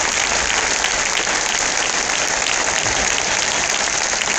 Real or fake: real